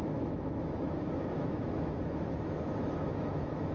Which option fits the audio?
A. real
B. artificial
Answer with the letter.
B